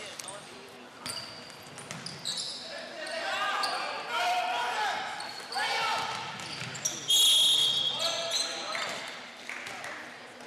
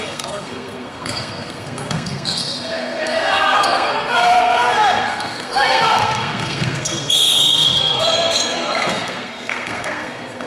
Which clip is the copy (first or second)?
second